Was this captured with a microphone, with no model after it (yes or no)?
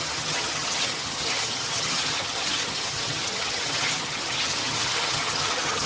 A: no